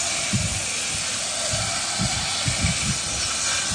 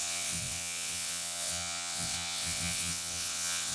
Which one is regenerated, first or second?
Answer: second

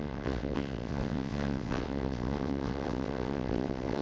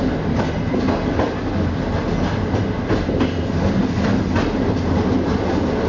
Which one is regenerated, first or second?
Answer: first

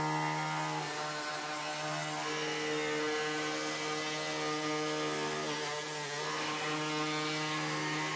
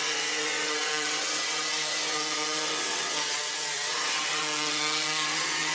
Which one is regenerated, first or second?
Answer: second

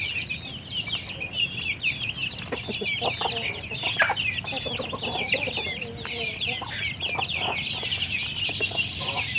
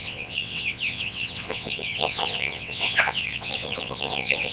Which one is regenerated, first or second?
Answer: second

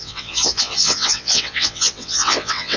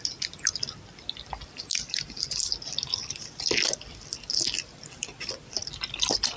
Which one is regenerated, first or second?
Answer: first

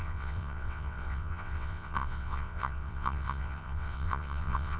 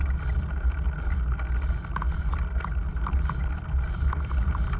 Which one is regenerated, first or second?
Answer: first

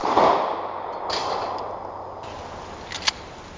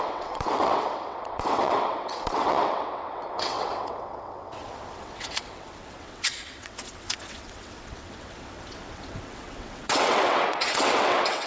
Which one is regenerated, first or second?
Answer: second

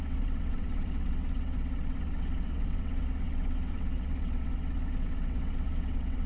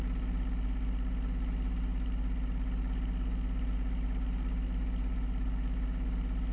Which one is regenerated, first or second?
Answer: first